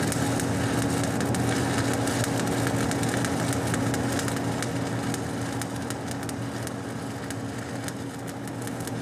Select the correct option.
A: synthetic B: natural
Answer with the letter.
B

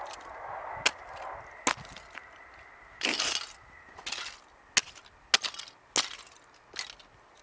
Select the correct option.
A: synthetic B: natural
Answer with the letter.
B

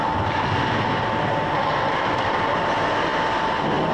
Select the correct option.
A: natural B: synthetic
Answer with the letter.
A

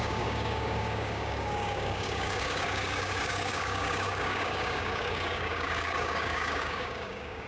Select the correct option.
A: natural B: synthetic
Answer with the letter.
B